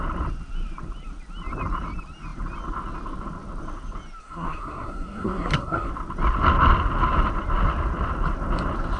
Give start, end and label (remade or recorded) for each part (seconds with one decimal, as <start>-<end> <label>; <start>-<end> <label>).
0.0-4.2 recorded; 4.2-5.9 remade; 5.9-9.0 recorded